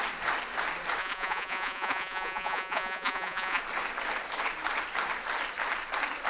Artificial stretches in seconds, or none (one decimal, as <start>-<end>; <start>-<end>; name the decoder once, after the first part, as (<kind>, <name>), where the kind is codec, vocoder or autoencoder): 1.0-3.6 (vocoder, Vocos)